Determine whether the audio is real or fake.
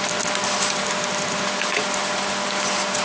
real